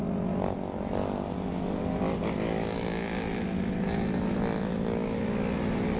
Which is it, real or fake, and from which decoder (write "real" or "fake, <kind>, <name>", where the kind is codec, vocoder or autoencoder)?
real